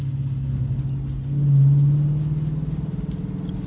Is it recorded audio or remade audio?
recorded